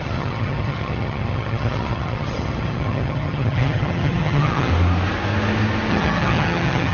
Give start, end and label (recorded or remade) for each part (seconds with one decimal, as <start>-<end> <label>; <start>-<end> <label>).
0.0-4.7 remade; 4.7-5.9 recorded; 5.9-6.9 remade